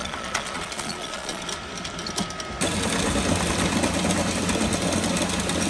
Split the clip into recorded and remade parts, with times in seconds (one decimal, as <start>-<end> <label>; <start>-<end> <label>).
0.0-1.4 remade; 1.4-5.7 recorded